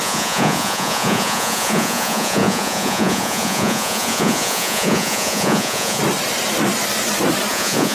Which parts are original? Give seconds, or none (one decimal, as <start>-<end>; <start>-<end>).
6.0-7.5